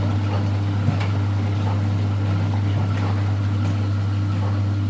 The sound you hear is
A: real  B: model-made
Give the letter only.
A